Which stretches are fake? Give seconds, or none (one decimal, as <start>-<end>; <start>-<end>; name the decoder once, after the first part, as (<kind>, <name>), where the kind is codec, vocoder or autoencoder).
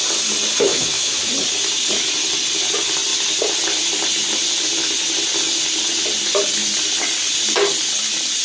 0.7-1.3 (autoencoder, DAC-VAE)